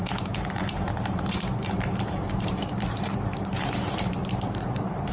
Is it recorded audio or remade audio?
remade